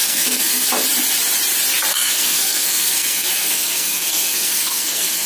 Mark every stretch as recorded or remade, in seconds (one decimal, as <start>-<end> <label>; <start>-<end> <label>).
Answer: 0.0-0.7 remade; 0.7-1.9 recorded; 1.9-5.3 remade

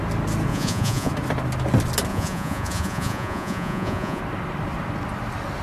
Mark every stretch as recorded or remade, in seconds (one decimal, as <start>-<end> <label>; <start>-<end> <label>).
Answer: 0.0-0.5 recorded; 0.5-1.1 remade; 1.1-2.1 recorded; 2.1-4.2 remade; 4.2-5.6 recorded